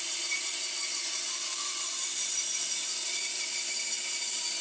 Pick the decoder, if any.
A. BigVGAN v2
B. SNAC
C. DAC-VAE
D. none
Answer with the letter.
A